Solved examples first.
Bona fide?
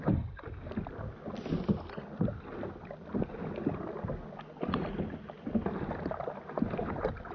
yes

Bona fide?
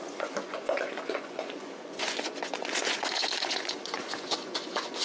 no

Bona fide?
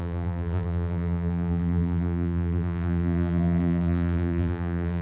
no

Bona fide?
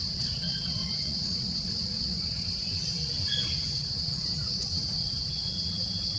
no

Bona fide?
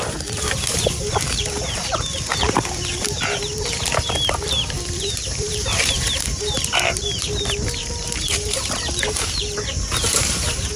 no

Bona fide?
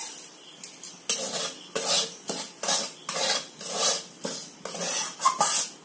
yes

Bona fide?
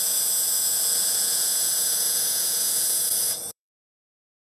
no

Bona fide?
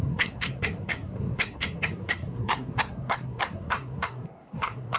no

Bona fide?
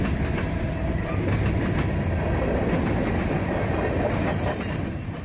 yes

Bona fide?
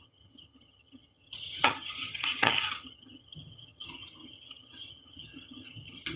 no